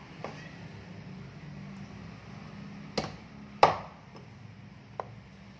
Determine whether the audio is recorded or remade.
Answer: recorded